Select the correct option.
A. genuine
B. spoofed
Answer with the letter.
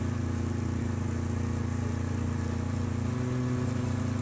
A